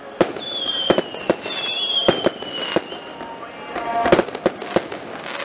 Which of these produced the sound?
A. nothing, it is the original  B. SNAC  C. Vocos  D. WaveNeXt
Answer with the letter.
A